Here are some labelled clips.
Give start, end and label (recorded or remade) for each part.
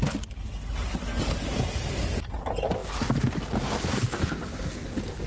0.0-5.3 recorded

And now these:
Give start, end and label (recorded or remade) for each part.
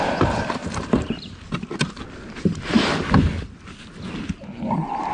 0.0-0.6 recorded; 0.6-1.9 remade; 1.9-2.5 recorded; 2.5-3.2 remade; 3.2-5.1 recorded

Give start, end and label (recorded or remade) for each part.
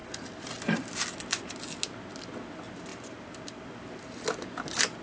0.0-5.0 recorded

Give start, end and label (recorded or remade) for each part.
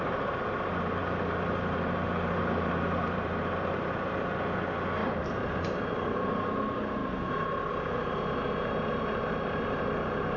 0.0-0.5 remade; 0.5-1.0 recorded; 1.0-3.4 remade; 3.4-5.0 recorded; 5.0-6.6 remade; 6.6-10.4 recorded